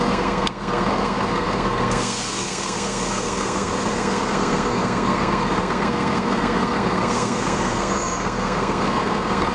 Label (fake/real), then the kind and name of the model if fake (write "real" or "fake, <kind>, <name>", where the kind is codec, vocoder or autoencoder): fake, codec, SNAC